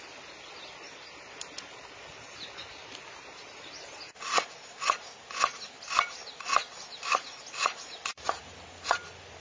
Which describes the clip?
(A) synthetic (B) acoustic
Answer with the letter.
B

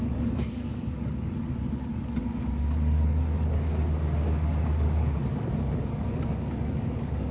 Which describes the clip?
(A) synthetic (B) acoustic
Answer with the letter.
A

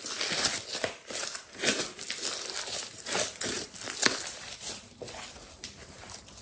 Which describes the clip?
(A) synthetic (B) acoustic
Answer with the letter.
B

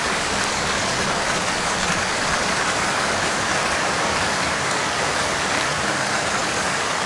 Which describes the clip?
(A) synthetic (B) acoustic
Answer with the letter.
A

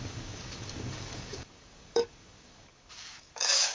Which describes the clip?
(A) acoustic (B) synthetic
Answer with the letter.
B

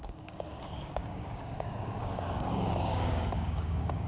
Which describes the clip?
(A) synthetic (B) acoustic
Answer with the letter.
A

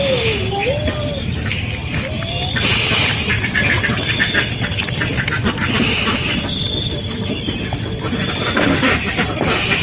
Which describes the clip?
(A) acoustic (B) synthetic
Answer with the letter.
A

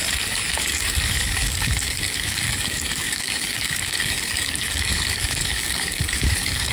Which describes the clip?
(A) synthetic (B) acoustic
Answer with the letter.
A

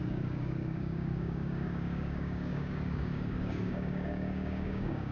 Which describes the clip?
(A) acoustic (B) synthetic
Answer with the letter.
B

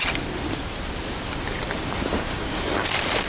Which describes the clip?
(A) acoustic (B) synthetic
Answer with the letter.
A